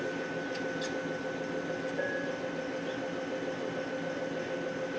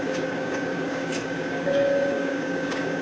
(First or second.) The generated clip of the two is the second